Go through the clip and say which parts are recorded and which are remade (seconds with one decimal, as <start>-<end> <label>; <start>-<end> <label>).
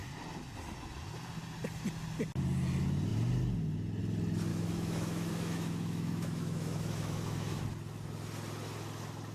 0.0-4.5 recorded; 4.5-7.6 remade; 7.6-9.3 recorded